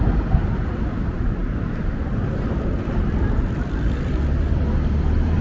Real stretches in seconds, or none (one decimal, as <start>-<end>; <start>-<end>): 0.0-5.4